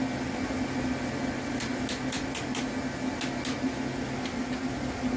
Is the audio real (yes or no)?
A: yes